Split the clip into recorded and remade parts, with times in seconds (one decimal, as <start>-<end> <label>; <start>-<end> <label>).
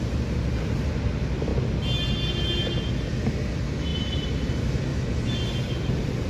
0.0-3.9 recorded; 3.9-4.5 remade; 4.5-4.9 recorded; 4.9-6.3 remade